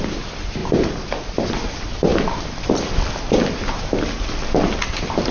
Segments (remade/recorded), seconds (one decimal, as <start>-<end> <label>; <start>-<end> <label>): 0.0-5.3 recorded